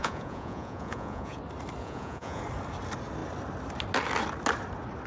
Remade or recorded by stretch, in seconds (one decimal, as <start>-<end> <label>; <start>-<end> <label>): 0.0-1.4 remade; 1.4-1.8 recorded; 1.8-2.4 remade; 2.4-5.1 recorded